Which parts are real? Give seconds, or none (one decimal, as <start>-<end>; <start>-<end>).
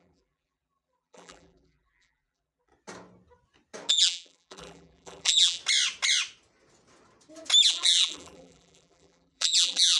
2.7-3.9; 5.6-7.7